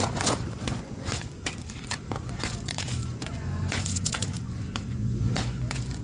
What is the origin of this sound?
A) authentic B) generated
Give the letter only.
B